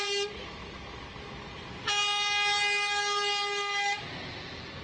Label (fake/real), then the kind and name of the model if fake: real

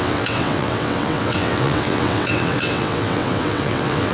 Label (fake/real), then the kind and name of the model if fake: fake, vocoder, WaveNeXt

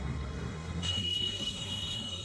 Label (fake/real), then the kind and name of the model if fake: fake, codec, SNAC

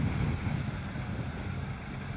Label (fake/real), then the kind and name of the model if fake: real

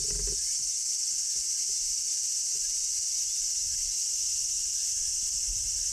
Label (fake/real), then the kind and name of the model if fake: real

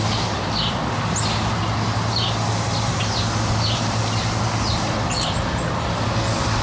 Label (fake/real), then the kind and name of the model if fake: real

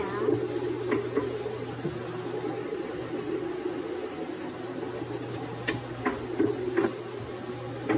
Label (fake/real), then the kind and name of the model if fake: real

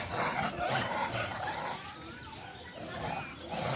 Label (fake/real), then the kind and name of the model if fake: real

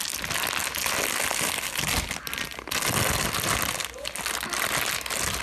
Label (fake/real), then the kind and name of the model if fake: real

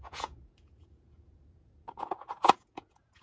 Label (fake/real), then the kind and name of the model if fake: fake, vocoder, Vocos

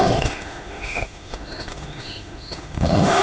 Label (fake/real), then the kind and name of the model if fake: fake, autoencoder, DAC-VAE